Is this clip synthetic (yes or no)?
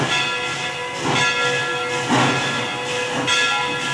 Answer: no